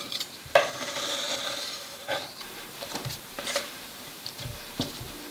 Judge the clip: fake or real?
fake